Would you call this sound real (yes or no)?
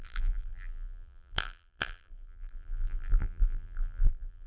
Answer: no